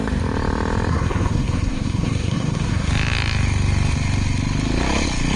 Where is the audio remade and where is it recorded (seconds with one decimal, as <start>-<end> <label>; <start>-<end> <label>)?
0.0-0.9 recorded; 0.9-2.9 remade; 2.9-5.4 recorded

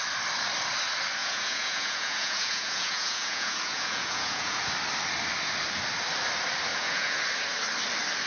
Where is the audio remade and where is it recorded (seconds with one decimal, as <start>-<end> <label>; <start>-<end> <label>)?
0.0-1.2 recorded; 1.2-4.6 remade; 4.6-6.7 recorded; 6.7-7.2 remade; 7.2-8.3 recorded

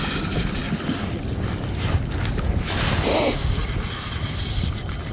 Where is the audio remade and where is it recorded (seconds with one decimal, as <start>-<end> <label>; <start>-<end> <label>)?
0.0-0.6 remade; 0.6-3.2 recorded; 3.2-5.1 remade

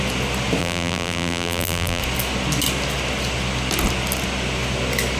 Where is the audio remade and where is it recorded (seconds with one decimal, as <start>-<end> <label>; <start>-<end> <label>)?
0.0-0.6 recorded; 0.6-2.0 remade; 2.0-5.2 recorded

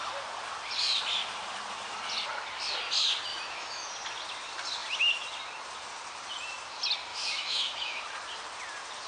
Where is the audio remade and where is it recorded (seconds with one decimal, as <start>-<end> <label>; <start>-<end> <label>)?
0.0-3.3 recorded; 3.3-3.9 remade; 3.9-7.1 recorded; 7.1-8.0 remade; 8.0-9.1 recorded

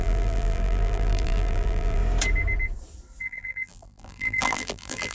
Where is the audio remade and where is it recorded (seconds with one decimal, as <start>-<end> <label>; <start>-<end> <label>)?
0.0-2.0 remade; 2.0-3.2 recorded; 3.2-5.1 remade

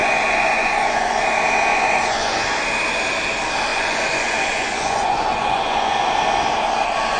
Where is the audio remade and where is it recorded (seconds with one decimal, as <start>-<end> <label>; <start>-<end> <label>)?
0.0-1.2 remade; 1.2-1.7 recorded; 1.7-2.4 remade; 2.4-3.7 recorded; 3.7-6.0 remade; 6.0-7.2 recorded

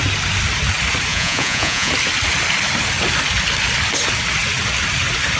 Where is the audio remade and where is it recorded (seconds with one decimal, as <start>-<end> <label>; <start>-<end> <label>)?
0.0-1.1 recorded; 1.1-1.9 remade; 1.9-5.4 recorded